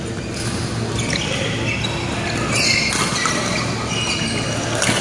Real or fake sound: real